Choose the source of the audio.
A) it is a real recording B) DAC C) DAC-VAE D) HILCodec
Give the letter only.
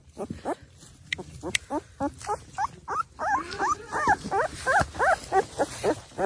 A